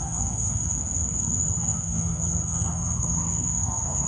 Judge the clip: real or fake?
fake